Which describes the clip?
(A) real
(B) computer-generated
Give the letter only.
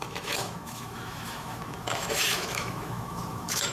B